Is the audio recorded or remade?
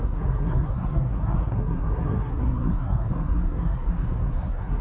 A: remade